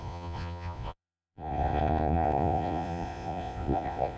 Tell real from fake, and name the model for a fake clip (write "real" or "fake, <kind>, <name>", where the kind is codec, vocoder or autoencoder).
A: fake, vocoder, Vocos